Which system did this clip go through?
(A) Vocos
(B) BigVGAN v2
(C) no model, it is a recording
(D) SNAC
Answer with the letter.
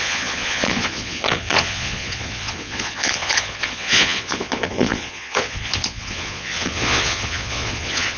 A